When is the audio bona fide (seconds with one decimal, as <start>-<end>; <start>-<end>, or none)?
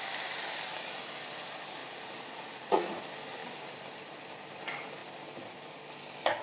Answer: 0.0-1.8; 3.0-6.4